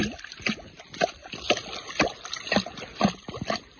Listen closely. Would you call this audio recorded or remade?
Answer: recorded